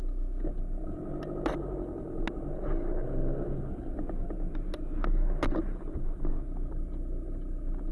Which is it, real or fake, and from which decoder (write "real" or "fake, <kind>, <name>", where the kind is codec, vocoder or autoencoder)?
real